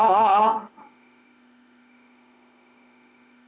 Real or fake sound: fake